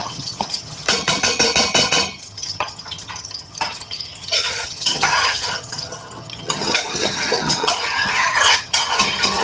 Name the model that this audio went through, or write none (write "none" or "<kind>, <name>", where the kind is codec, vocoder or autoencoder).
vocoder, HiFi-GAN